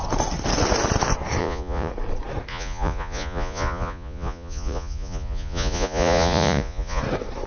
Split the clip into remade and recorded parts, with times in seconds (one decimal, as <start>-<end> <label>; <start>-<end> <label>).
0.0-1.4 recorded; 1.4-1.9 remade; 1.9-2.5 recorded; 2.5-7.0 remade; 7.0-7.5 recorded